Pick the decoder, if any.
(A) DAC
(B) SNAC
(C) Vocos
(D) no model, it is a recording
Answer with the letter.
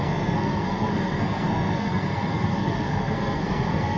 B